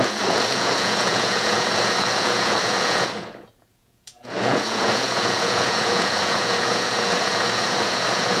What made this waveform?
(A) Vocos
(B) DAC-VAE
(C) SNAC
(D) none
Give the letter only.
A